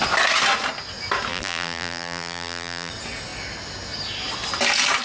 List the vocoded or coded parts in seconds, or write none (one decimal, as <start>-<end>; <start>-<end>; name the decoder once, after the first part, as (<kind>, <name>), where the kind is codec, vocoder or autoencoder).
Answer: 1.3-2.9 (vocoder, BigVGAN v2)